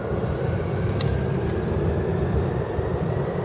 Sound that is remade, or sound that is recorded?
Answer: recorded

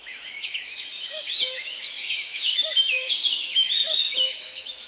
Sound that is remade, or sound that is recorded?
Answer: remade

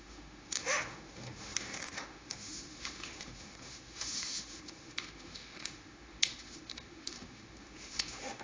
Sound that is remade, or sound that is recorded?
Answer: remade